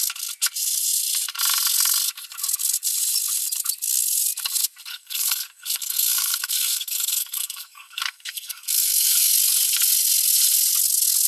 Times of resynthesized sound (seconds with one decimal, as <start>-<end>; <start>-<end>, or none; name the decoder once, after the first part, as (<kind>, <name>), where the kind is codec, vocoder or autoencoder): 4.9-9.3 (codec, SNAC)